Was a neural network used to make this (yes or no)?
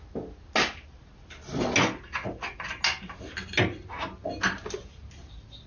no